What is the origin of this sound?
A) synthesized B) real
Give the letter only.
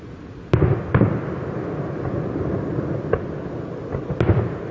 B